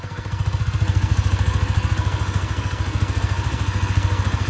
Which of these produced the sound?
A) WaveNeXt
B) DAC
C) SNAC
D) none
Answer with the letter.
C